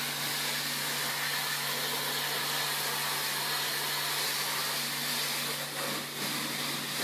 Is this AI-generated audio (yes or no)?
no